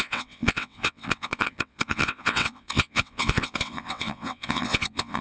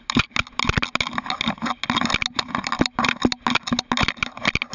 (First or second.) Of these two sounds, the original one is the second